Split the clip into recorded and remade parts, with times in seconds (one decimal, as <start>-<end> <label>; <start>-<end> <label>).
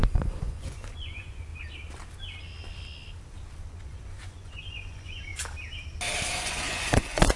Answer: 0.0-1.5 remade; 1.5-3.7 recorded; 3.7-5.3 remade; 5.3-6.3 recorded; 6.3-7.4 remade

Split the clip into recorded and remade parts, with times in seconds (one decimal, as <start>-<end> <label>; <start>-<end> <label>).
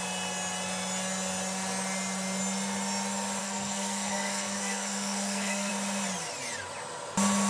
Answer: 0.0-3.4 recorded; 3.4-5.7 remade; 5.7-7.5 recorded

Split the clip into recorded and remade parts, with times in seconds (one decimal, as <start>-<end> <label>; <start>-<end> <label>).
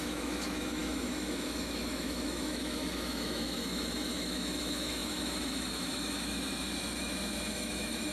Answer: 0.0-8.1 remade